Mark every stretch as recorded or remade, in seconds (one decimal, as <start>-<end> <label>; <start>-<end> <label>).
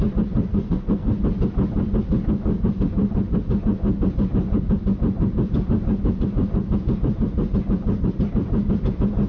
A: 0.0-0.5 recorded; 0.5-1.1 remade; 1.1-9.3 recorded